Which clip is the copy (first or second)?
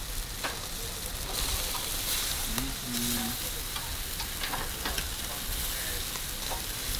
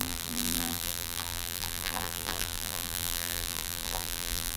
second